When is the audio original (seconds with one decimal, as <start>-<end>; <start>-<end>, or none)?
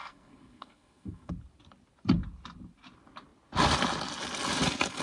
1.3-5.0